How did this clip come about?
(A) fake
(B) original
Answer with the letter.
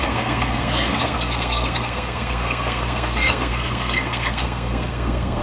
A